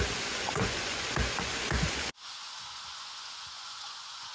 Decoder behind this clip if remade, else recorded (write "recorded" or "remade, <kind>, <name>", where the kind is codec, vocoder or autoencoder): remade, vocoder, Vocos